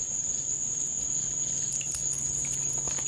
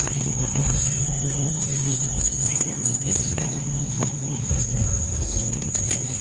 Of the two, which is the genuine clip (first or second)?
first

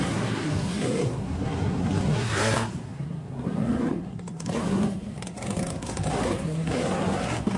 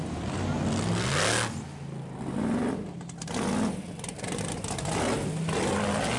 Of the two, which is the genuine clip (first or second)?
second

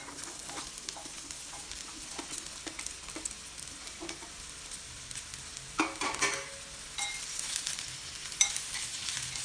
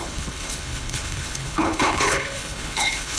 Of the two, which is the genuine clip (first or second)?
first